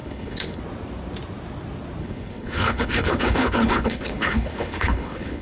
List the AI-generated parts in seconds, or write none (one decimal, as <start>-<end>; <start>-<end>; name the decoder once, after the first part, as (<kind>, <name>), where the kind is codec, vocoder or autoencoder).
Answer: 0.0-0.6 (codec, HILCodec); 2.0-5.4